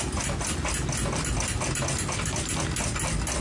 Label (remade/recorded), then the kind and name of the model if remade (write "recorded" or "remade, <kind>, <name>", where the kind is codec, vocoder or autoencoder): recorded